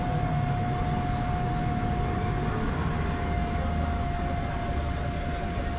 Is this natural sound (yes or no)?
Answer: yes